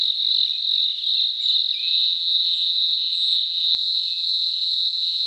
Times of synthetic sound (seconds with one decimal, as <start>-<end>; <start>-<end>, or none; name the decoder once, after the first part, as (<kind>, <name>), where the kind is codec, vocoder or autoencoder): 1.8-5.3 (vocoder, BigVGAN v2)

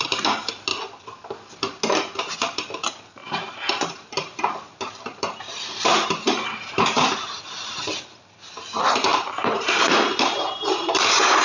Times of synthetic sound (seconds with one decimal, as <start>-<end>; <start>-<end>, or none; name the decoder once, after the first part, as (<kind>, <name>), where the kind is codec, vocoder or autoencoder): 3.2-7.4 (vocoder, BigVGAN v2); 9.1-11.4

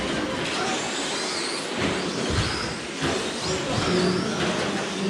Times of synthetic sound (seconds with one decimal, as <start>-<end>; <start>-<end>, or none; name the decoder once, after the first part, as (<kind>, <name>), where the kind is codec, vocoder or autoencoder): none

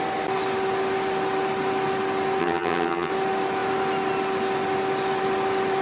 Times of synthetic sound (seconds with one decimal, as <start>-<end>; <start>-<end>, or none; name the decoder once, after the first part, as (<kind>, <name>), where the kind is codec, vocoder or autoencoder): 2.4-3.1 (vocoder, HiFi-GAN)

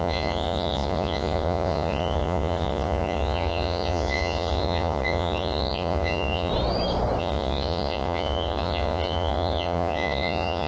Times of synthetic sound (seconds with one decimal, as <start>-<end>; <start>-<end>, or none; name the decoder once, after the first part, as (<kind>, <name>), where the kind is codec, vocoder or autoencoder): 0.0-6.5 (vocoder, Vocos); 7.2-10.7

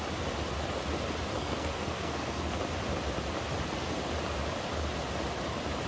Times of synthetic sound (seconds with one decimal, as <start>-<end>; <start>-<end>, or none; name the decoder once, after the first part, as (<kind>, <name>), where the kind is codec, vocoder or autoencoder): 1.4-2.6 (codec, SNAC)

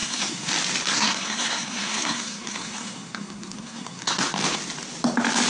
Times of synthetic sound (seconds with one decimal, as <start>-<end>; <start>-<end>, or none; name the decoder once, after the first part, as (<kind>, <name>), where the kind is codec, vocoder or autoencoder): 0.0-0.5 (codec, SNAC); 0.9-4.2